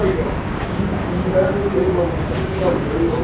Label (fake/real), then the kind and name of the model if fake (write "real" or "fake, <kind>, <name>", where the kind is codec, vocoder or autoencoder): fake, codec, DAC